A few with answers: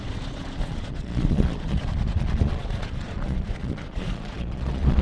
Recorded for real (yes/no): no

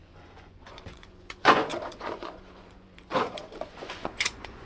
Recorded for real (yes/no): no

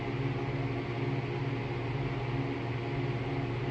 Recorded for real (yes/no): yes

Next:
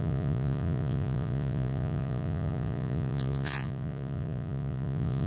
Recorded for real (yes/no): no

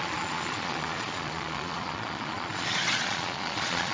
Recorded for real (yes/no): no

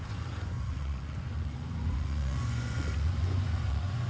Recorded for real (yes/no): no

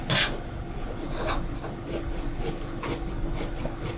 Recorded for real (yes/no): yes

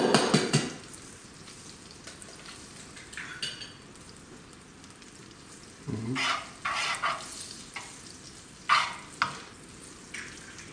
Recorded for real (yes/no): yes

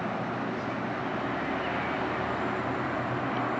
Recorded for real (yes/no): yes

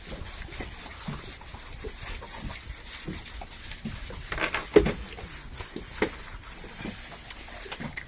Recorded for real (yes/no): yes